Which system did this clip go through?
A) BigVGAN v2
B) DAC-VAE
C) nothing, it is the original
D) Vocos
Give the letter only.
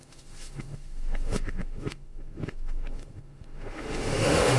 B